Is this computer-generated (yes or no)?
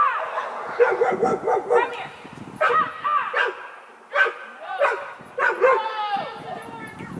no